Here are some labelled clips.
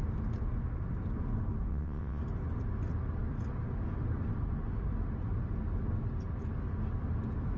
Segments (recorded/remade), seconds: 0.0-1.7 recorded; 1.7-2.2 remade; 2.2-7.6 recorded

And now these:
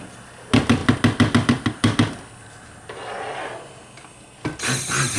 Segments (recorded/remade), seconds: 0.0-5.2 recorded

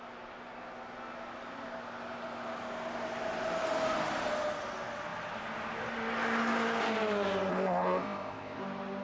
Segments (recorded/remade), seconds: 0.0-7.5 recorded; 7.5-8.6 remade; 8.6-9.0 recorded

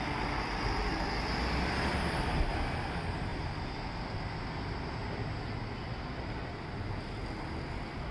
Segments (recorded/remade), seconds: 0.0-1.9 recorded; 1.9-2.5 remade; 2.5-8.1 recorded